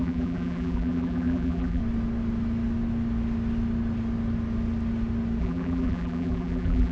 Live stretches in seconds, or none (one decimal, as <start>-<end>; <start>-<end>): 1.8-5.4